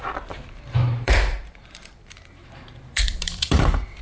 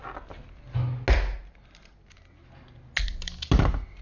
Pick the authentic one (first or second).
second